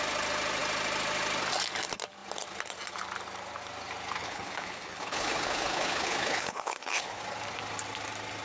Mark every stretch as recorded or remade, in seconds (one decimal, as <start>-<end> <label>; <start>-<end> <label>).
0.0-4.2 recorded; 4.2-7.2 remade; 7.2-8.4 recorded